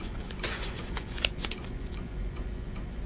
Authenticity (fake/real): fake